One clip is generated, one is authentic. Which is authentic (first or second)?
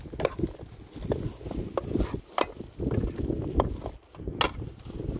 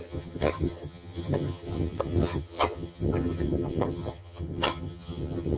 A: first